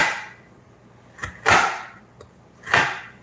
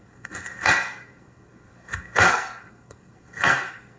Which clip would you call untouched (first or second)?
first